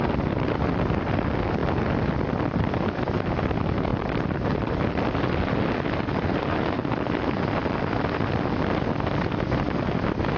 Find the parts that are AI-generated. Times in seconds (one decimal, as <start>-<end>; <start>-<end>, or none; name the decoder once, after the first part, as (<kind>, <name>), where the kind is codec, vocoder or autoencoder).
3.9-4.7 (vocoder, BigVGAN v2)